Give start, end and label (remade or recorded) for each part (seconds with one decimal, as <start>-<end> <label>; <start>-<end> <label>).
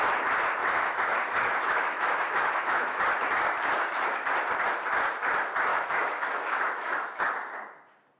0.0-0.6 recorded; 0.6-3.0 remade; 3.0-5.7 recorded; 5.7-7.2 remade; 7.2-8.2 recorded